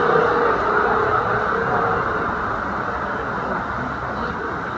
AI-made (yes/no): no